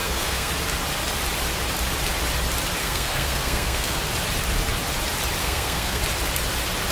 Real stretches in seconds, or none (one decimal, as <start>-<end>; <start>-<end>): 0.5-2.8; 4.0-5.4; 6.0-6.9

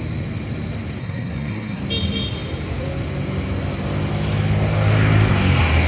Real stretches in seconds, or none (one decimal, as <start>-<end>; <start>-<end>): 0.0-1.0; 1.8-5.9

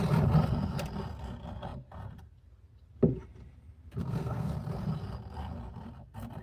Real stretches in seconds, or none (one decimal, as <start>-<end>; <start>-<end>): 0.0-4.0; 4.5-6.4

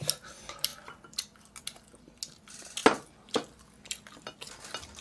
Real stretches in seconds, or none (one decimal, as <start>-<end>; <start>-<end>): 0.0-5.0

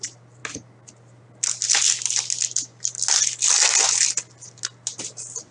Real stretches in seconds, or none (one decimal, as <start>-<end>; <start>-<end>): 0.0-5.5